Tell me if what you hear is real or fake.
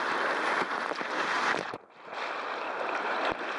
real